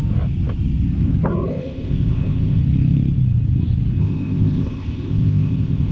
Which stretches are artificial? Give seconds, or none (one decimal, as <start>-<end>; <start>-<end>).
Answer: 1.5-2.6; 4.0-5.9